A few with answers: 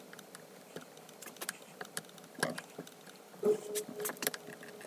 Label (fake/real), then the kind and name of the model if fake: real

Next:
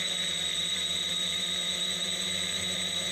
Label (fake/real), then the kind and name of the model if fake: real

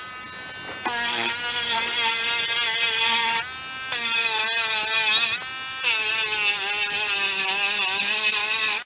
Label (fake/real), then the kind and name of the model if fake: real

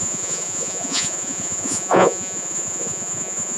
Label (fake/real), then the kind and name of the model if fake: fake, vocoder, Vocos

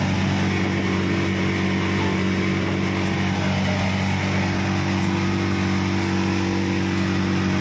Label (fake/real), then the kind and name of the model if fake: real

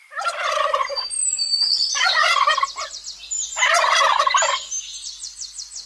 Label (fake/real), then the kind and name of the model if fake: real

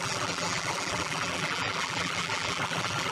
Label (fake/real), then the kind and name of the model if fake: fake, vocoder, BigVGAN v2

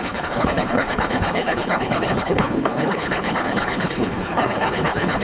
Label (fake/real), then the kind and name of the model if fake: fake, codec, HILCodec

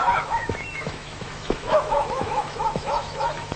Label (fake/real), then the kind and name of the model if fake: fake, autoencoder, DAC-VAE